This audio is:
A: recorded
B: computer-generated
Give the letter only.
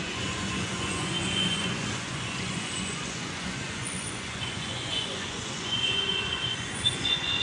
B